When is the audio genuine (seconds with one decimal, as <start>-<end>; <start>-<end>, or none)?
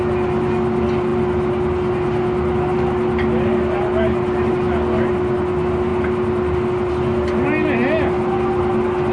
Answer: 0.0-1.1; 4.5-5.9; 6.9-9.1